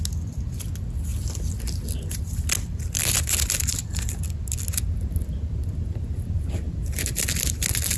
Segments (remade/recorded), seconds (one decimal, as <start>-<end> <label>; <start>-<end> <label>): 0.0-8.0 recorded